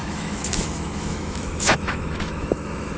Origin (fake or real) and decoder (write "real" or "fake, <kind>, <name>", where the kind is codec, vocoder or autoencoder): fake, autoencoder, DAC-VAE